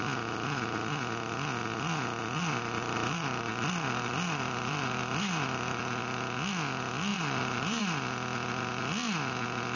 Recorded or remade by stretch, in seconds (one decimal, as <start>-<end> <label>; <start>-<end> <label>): 0.0-2.4 recorded; 2.4-5.8 remade; 5.8-7.1 recorded; 7.1-7.8 remade; 7.8-9.8 recorded

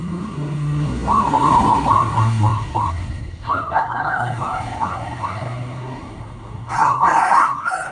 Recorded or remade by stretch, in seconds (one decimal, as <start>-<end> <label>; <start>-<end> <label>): 0.0-7.9 remade

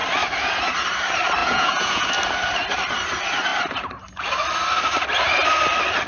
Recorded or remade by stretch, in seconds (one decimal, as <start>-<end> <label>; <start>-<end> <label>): 0.0-1.4 recorded; 1.4-2.1 remade; 2.1-6.1 recorded

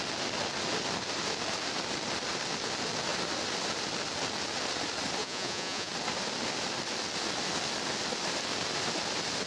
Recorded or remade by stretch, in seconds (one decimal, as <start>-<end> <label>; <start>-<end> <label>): 0.0-5.2 recorded; 5.2-5.9 remade; 5.9-9.5 recorded

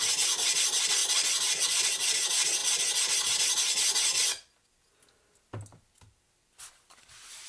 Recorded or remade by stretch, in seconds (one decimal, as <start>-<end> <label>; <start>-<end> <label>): 0.0-7.5 recorded

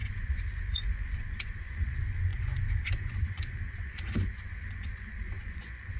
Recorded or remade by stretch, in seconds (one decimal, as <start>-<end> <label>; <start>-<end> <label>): 0.0-6.0 remade